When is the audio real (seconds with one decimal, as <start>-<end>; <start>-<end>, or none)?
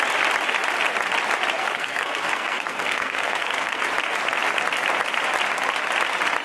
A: 0.0-1.6; 3.8-6.4